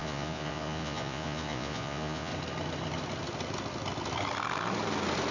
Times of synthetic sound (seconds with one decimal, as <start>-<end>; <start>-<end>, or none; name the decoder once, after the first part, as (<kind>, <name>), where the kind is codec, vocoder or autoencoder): 0.0-2.3 (vocoder, Vocos)